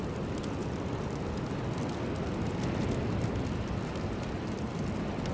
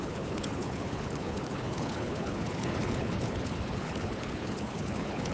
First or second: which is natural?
first